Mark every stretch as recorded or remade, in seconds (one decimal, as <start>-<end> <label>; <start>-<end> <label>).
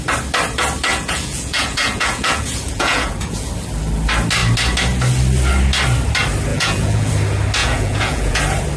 0.0-0.9 recorded; 0.9-3.5 remade; 3.5-6.5 recorded; 6.5-7.1 remade; 7.1-7.6 recorded; 7.6-8.4 remade; 8.4-8.8 recorded